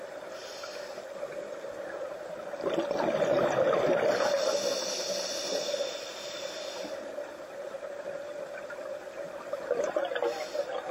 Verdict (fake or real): real